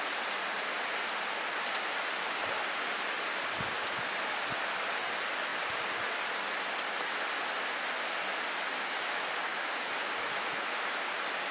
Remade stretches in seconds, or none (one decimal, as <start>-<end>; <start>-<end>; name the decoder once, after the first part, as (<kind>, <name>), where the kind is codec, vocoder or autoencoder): 9.5-11.1 (autoencoder, DAC-VAE)